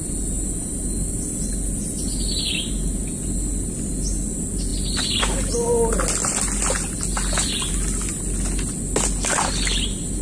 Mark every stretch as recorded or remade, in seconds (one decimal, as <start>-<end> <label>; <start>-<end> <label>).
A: 0.0-10.2 recorded